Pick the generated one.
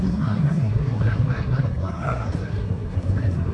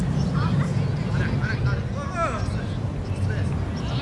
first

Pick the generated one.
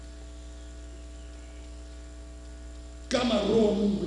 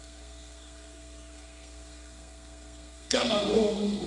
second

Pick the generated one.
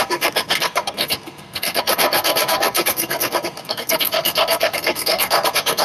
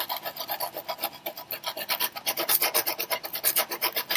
first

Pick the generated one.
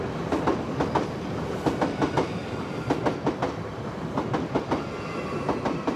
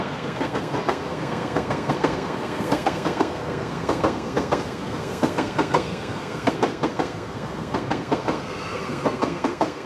second